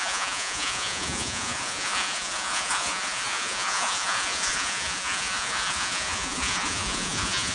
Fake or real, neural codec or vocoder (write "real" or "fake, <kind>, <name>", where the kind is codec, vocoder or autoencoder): fake, vocoder, Vocos